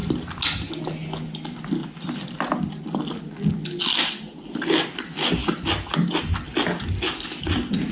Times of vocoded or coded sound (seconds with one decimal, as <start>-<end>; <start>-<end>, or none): 1.8-2.8